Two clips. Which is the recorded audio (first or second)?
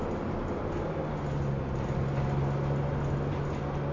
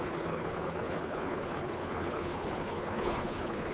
first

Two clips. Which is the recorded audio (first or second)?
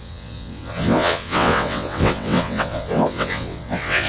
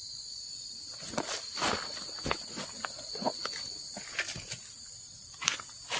second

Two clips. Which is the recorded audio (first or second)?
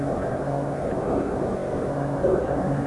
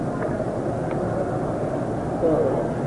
second